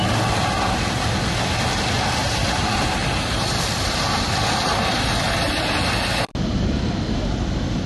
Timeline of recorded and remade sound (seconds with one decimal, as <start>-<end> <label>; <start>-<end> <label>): 0.0-2.2 recorded; 2.2-3.6 remade; 3.6-7.9 recorded